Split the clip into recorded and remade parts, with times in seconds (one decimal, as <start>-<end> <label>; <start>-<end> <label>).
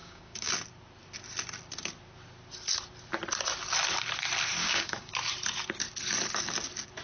0.0-0.5 remade; 0.5-4.6 recorded; 4.6-5.1 remade; 5.1-7.0 recorded